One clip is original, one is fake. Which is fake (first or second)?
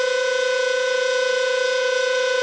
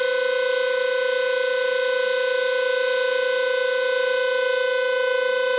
first